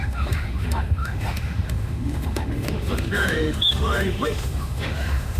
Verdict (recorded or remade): remade